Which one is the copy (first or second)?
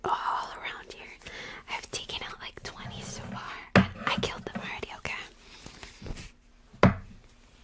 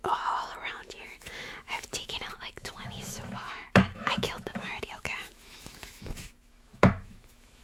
second